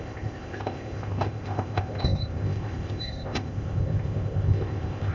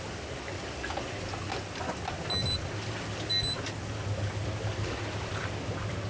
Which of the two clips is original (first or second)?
second